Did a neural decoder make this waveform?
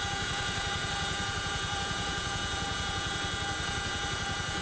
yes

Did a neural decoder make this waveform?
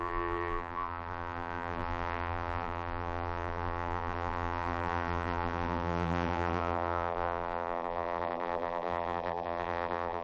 yes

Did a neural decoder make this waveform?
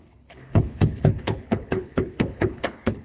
yes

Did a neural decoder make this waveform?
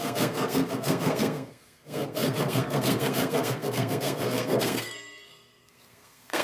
yes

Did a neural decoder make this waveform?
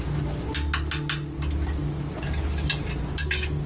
no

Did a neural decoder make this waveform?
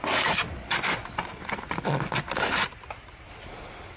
no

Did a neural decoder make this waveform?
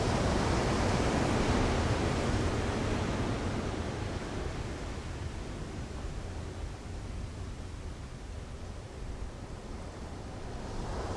no